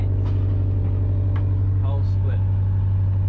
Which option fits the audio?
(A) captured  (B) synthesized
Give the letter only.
A